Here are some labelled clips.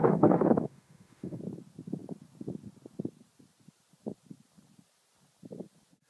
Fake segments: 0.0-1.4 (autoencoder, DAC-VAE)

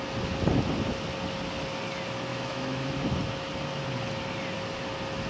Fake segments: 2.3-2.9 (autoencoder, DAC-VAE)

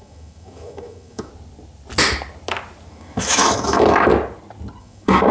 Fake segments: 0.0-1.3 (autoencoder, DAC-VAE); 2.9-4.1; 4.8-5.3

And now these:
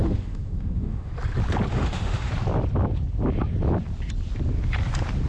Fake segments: 0.0-1.1 (autoencoder, DAC-VAE); 1.7-2.3